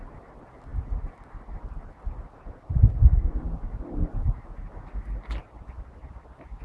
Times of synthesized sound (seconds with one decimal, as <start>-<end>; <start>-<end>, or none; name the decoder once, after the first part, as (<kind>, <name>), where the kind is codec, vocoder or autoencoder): none